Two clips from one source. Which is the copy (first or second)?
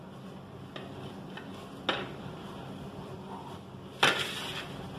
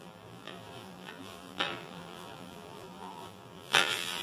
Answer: second